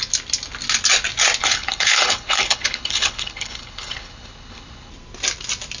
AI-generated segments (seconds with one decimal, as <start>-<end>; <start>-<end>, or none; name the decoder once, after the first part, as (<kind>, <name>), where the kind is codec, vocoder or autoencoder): 1.4-4.9 (codec, HILCodec)